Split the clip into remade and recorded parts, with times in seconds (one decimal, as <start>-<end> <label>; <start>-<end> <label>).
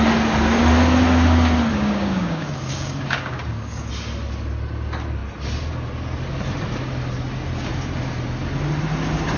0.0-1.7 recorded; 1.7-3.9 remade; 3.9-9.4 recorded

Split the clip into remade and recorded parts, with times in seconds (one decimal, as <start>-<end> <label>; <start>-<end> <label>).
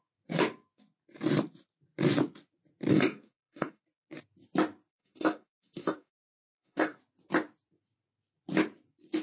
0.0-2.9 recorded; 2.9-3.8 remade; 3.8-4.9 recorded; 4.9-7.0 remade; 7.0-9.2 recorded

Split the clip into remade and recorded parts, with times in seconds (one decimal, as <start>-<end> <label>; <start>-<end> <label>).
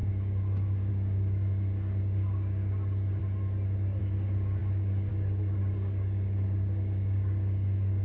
0.0-3.2 remade; 3.2-4.0 recorded; 4.0-8.0 remade